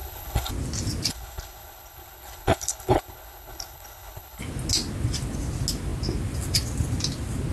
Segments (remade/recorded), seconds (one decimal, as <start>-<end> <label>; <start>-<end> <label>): 0.0-0.5 remade; 0.5-1.1 recorded; 1.1-4.4 remade; 4.4-7.5 recorded